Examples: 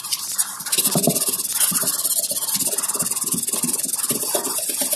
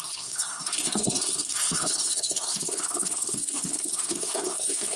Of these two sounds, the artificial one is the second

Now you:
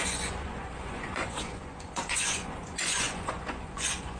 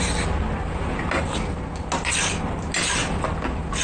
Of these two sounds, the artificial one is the first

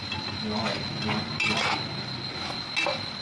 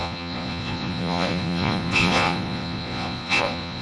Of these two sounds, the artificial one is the second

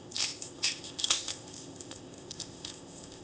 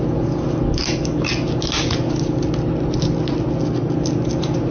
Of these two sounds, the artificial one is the first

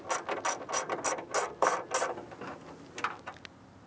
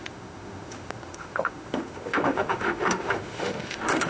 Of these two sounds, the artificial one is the second